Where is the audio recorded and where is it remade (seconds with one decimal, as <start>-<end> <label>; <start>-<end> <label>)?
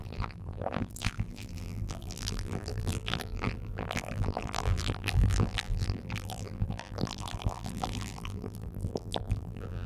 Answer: 0.0-9.9 remade